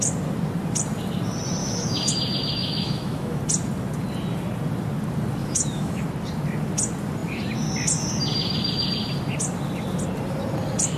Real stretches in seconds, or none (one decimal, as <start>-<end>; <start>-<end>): 0.0-1.6; 2.1-2.6; 3.4-5.4; 6.0-11.0